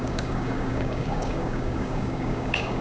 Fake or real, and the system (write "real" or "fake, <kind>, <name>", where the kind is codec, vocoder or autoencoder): fake, codec, DAC